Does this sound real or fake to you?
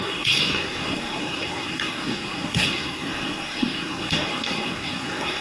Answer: fake